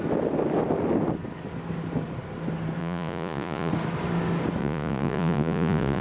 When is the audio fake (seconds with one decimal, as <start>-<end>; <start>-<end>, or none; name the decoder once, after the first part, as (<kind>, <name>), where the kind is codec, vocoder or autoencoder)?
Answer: 2.8-3.7 (vocoder, Vocos); 4.6-6.0